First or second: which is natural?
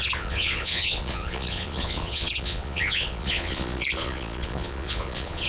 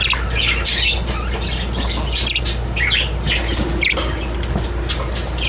second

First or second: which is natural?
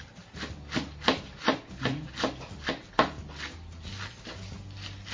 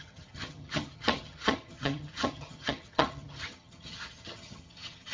first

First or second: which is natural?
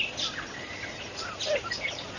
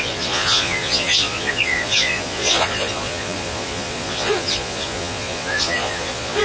first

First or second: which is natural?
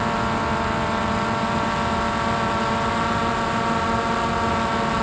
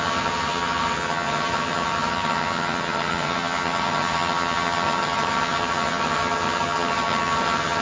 first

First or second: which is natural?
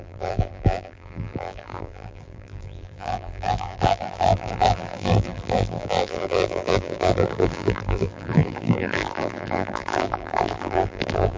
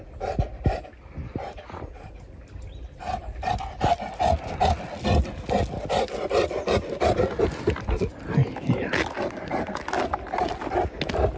second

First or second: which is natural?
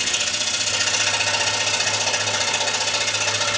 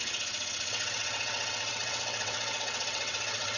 first